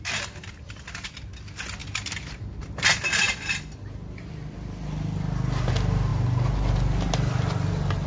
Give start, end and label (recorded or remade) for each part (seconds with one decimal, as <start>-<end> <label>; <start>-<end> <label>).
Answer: 0.0-8.1 recorded